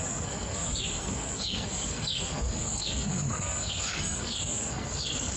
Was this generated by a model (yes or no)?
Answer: yes